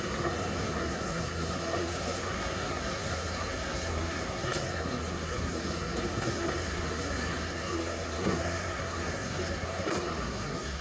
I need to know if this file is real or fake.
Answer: fake